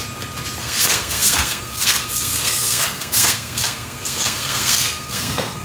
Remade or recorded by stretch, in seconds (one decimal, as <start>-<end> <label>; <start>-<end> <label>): 0.0-0.6 recorded; 0.6-5.6 remade